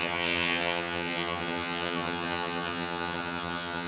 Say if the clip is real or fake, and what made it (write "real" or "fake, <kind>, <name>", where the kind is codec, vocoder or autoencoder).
fake, vocoder, HiFi-GAN